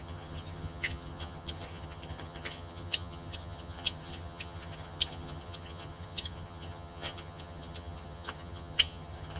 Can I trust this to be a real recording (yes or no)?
no